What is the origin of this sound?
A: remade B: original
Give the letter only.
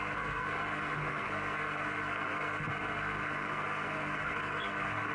A